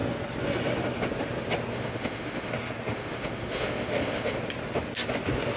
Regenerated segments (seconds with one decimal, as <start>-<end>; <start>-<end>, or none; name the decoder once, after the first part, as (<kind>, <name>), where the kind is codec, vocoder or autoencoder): 1.7-2.5 (autoencoder, DAC-VAE); 2.9-4.4